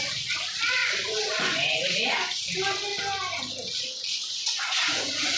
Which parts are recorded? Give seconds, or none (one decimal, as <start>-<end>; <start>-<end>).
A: 0.0-0.8; 2.4-4.1